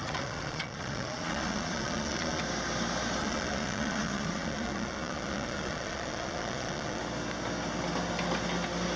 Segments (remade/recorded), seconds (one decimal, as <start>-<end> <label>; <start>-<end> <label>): 0.0-2.4 remade; 2.4-3.2 recorded; 3.2-7.0 remade; 7.0-9.0 recorded